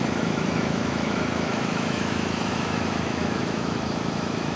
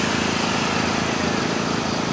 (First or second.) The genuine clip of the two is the second